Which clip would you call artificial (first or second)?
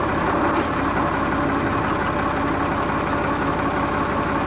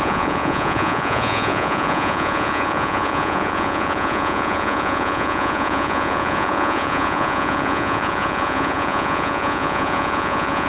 second